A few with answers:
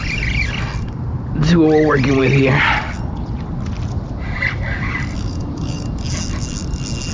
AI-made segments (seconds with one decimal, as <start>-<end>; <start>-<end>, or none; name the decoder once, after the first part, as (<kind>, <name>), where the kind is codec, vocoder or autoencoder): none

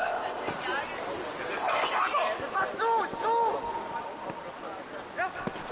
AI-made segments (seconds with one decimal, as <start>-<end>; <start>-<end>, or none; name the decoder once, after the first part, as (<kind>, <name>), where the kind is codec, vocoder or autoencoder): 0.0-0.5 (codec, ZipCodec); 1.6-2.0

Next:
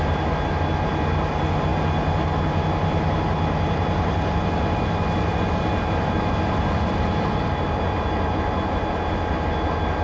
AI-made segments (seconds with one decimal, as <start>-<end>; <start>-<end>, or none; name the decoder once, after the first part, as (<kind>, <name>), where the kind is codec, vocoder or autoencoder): none

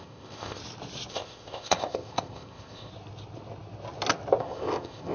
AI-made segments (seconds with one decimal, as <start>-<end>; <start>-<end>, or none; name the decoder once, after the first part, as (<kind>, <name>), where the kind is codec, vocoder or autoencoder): 0.0-0.6 (codec, ZipCodec); 1.1-2.9; 4.4-5.1

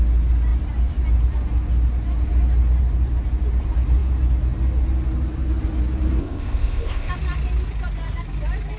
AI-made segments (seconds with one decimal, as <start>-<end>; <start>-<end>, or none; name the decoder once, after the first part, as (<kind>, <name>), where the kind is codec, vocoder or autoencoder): 6.2-7.1 (codec, ZipCodec)

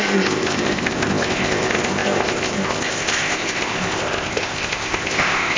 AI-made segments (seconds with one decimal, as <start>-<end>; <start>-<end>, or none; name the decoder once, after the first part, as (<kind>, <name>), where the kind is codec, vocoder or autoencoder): 0.0-5.6 (codec, ZipCodec)